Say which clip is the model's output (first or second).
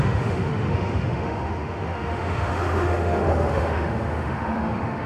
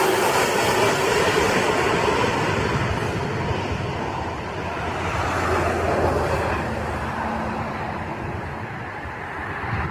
first